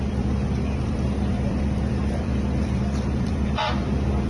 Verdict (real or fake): fake